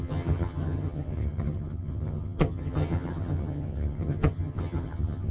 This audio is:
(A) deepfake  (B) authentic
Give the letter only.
A